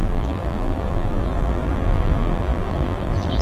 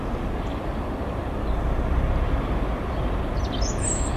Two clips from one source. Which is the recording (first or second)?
second